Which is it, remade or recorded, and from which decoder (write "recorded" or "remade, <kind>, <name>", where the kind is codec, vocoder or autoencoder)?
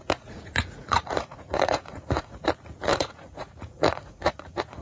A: remade, vocoder, Vocos